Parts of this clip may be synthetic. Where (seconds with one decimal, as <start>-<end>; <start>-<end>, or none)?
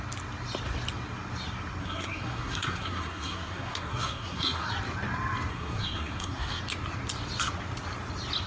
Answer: 1.8-4.7; 5.5-6.6